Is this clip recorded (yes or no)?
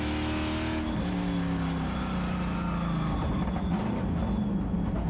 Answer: yes